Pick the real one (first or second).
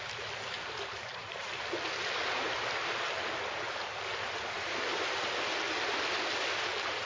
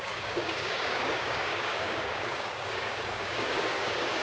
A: first